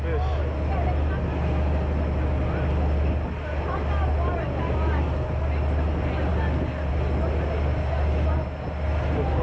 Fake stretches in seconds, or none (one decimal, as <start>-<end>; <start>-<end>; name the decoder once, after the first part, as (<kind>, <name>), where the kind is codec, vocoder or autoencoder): none